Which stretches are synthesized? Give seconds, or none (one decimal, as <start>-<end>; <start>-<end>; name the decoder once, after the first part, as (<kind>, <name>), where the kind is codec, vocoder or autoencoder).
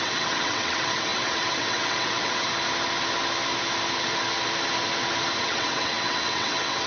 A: 0.0-2.5 (vocoder, WaveNeXt); 5.4-6.9